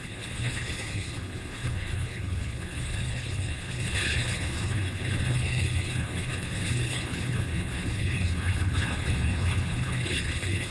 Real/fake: fake